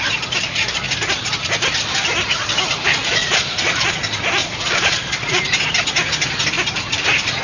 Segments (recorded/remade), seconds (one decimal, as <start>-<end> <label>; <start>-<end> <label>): 0.0-3.2 recorded; 3.2-4.0 remade; 4.0-4.4 recorded; 4.4-5.4 remade; 5.4-7.4 recorded